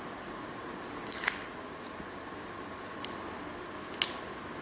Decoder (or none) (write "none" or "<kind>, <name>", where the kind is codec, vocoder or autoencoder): none